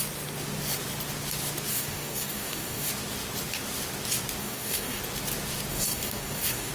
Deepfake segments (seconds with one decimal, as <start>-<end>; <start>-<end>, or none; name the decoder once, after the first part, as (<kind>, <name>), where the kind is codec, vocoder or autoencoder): 1.7-2.9 (codec, DAC); 4.4-5.0; 5.7-6.7